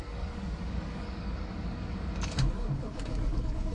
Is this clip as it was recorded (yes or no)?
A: no